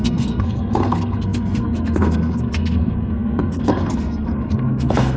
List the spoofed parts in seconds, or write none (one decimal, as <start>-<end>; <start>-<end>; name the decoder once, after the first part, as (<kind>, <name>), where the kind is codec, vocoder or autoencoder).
0.0-5.2 (codec, SNAC)